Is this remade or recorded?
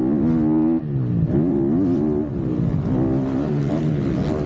recorded